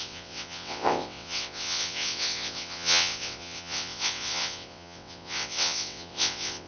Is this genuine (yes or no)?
no